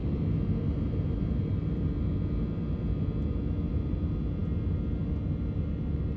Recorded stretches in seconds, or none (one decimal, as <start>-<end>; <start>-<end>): 0.0-6.2